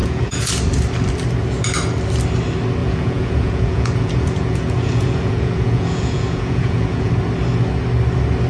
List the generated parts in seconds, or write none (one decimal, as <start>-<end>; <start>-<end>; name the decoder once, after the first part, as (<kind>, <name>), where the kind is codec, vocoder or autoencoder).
0.0-0.5 (vocoder, Vocos); 2.8-7.1